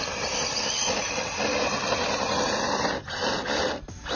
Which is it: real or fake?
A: real